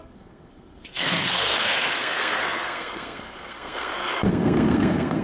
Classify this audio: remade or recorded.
remade